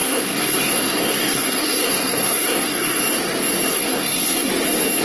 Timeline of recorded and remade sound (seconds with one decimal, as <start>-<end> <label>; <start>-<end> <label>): 0.0-3.0 remade; 3.0-3.7 recorded; 3.7-4.5 remade; 4.5-5.0 recorded